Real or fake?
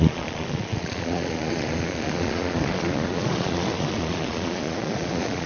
fake